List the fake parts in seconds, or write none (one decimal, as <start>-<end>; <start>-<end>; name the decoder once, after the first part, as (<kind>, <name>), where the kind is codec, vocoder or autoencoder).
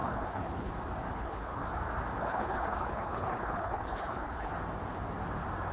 0.0-0.7 (codec, HILCodec); 1.1-1.7; 2.2-4.5